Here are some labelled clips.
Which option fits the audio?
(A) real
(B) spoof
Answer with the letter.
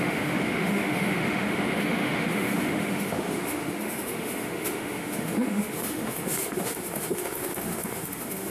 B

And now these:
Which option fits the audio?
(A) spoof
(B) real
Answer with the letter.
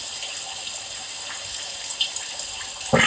B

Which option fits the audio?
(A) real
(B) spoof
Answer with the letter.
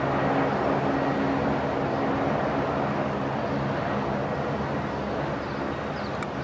A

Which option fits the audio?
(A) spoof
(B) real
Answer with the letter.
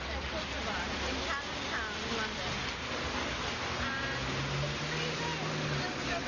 B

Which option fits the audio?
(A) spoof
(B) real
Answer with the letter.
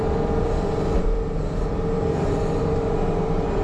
A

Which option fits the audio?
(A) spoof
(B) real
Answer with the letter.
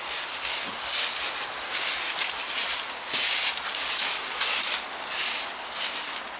B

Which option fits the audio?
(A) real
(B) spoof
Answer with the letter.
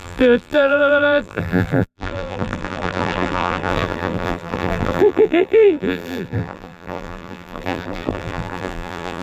B